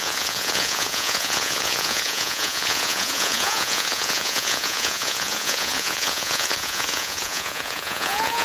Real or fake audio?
fake